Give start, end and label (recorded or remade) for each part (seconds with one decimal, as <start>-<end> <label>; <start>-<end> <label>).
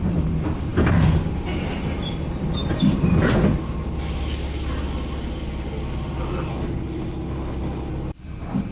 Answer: 0.0-6.5 recorded; 6.5-7.9 remade; 7.9-8.7 recorded